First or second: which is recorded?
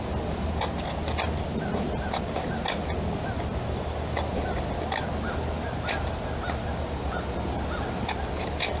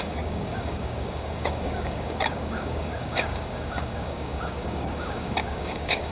first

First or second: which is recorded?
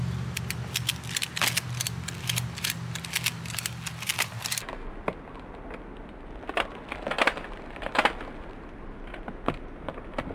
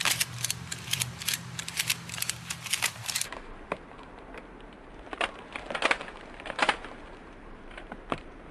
first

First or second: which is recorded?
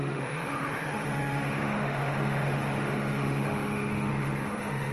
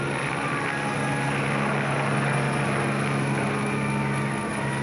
second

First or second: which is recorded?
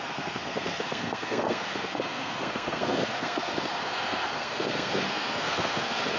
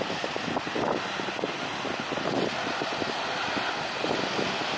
second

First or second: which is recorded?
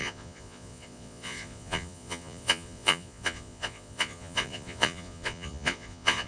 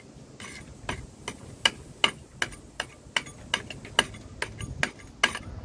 second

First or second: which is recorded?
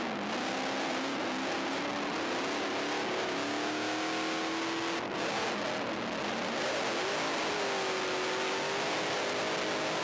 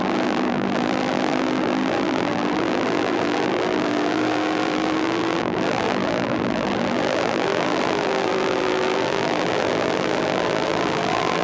first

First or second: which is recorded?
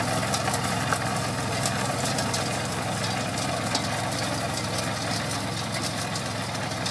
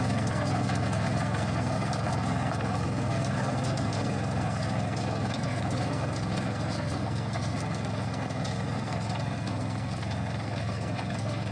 first